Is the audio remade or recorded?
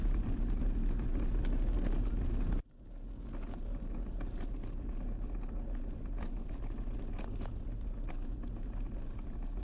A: recorded